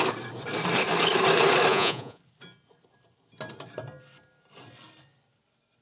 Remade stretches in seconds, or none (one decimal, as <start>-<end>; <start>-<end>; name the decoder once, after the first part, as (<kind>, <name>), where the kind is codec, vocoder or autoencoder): 1.7-2.2 (vocoder, Vocos)